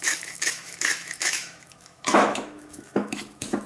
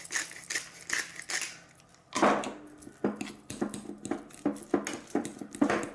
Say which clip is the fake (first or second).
first